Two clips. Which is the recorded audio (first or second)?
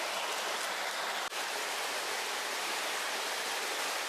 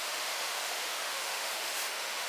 first